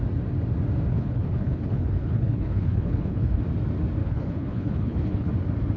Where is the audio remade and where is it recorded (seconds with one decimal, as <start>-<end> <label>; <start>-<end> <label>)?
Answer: 0.0-0.9 recorded; 0.9-3.4 remade; 3.4-4.0 recorded; 4.0-5.3 remade; 5.3-5.8 recorded